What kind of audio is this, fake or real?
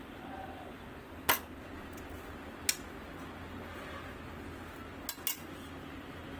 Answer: real